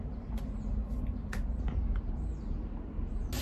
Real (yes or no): yes